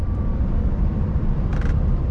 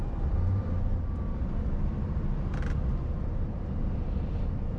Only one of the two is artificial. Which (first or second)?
first